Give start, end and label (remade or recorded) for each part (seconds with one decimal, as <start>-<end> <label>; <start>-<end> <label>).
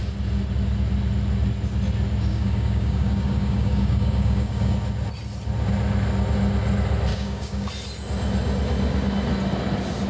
0.0-2.3 recorded; 2.3-4.7 remade; 4.7-7.1 recorded; 7.1-7.7 remade; 7.7-10.1 recorded